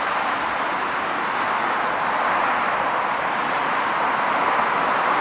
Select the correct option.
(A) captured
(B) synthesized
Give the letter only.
A